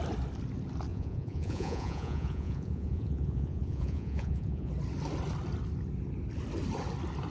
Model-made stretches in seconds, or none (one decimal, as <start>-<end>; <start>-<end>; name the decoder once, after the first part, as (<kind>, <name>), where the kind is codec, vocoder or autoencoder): 0.9-4.7 (vocoder, Vocos)